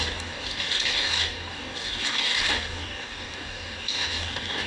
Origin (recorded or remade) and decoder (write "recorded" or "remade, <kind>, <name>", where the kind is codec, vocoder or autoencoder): remade, codec, DAC